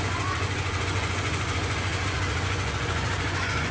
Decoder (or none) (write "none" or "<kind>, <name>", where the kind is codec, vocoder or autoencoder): vocoder, Vocos